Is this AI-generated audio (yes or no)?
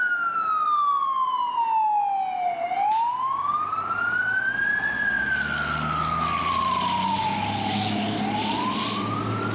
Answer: no